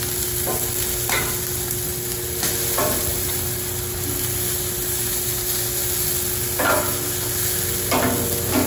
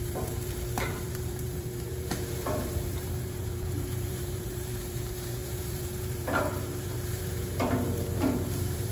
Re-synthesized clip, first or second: second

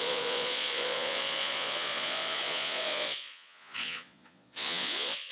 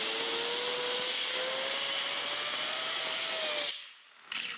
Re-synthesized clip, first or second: first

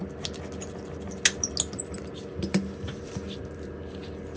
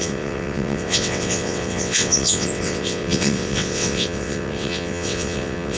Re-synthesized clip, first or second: second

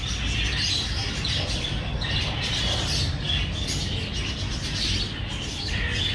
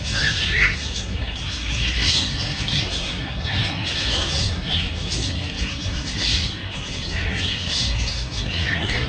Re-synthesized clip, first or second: second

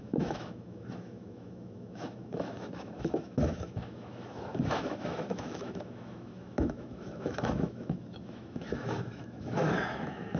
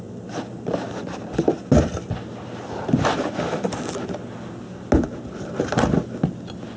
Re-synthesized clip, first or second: first